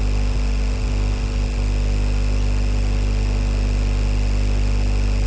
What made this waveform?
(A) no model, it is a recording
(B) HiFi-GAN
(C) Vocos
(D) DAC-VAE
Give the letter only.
A